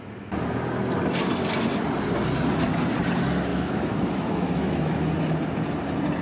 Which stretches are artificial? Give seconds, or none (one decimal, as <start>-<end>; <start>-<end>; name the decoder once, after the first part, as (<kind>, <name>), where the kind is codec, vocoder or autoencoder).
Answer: 3.5-5.1 (autoencoder, DAC-VAE)